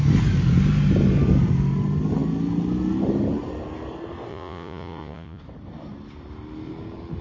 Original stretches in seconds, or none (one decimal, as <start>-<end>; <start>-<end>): 0.0-4.3; 5.4-7.2